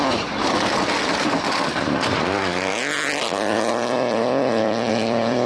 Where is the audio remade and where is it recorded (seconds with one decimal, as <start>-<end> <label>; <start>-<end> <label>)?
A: 0.0-0.4 remade; 0.4-1.2 recorded; 1.2-2.7 remade; 2.7-3.7 recorded; 3.7-5.5 remade